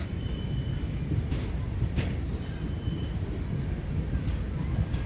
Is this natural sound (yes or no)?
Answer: yes